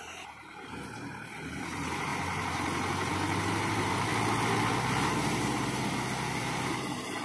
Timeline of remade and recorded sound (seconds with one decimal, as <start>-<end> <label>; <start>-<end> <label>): 0.0-4.1 remade; 4.1-6.4 recorded; 6.4-7.2 remade

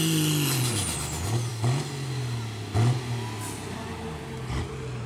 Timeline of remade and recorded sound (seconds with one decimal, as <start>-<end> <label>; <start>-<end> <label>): 0.0-5.1 recorded

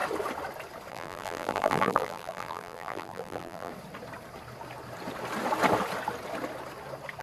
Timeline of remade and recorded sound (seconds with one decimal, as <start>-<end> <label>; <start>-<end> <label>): 0.0-0.9 recorded; 0.9-3.7 remade; 3.7-7.2 recorded